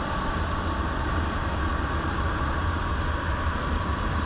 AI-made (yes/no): no